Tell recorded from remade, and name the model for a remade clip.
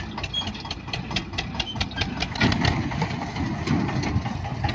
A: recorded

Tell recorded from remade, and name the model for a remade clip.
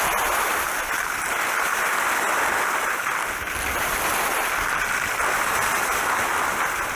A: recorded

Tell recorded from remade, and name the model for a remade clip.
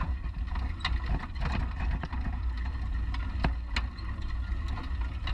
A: recorded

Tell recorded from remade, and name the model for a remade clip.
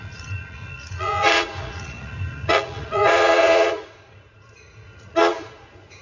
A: remade, vocoder, Vocos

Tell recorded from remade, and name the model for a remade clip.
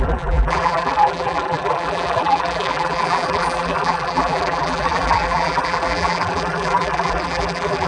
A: remade, vocoder, BigVGAN v2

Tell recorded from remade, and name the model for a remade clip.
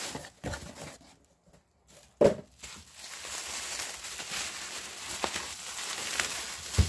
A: recorded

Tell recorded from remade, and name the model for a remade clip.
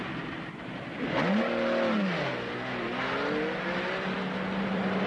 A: recorded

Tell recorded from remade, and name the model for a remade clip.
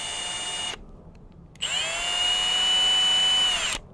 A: recorded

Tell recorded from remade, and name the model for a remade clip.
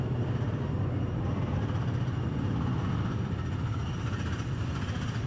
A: recorded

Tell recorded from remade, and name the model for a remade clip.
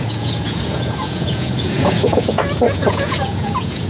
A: remade, vocoder, Vocos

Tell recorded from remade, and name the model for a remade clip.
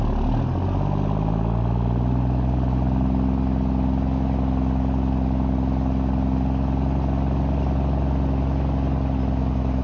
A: recorded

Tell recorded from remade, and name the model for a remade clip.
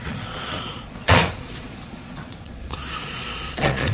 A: remade, vocoder, Vocos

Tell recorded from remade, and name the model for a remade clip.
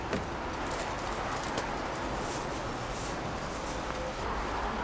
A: recorded